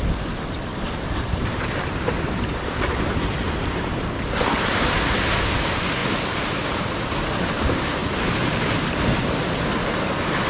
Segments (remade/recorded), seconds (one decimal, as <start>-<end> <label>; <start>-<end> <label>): 0.0-0.7 recorded; 0.7-3.5 remade; 3.5-6.0 recorded; 6.0-7.1 remade; 7.1-10.5 recorded